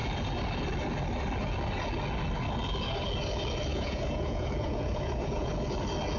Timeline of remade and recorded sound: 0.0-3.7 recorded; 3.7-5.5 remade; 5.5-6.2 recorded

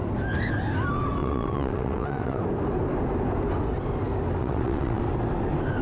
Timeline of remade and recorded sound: 0.0-1.2 recorded; 1.2-2.4 remade; 2.4-4.4 recorded; 4.4-5.0 remade; 5.0-5.8 recorded

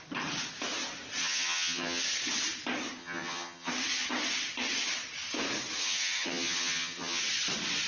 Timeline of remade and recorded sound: 0.0-1.2 recorded; 1.2-2.0 remade; 2.0-3.0 recorded; 3.0-3.7 remade; 3.7-5.8 recorded; 5.8-7.2 remade; 7.2-7.9 recorded

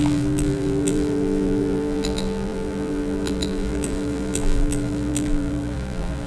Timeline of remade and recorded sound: 0.0-6.3 remade

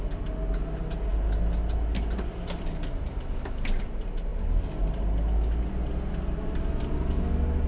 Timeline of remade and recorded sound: 0.0-7.7 recorded

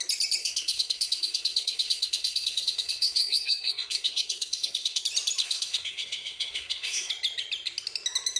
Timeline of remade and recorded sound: 0.0-0.4 recorded; 0.4-5.0 remade; 5.0-5.4 recorded; 5.4-7.1 remade; 7.1-8.4 recorded

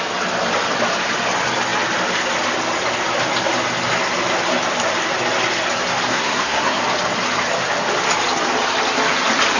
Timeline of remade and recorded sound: 0.0-6.1 recorded; 6.1-6.8 remade; 6.8-9.6 recorded